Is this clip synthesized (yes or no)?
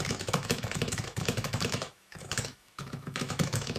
yes